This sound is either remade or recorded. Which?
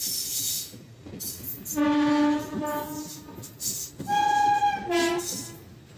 recorded